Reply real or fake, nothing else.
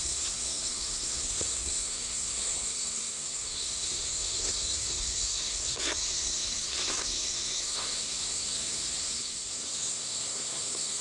fake